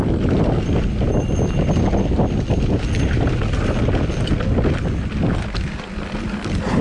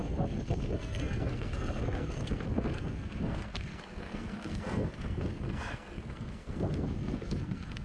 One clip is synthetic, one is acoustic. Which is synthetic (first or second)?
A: second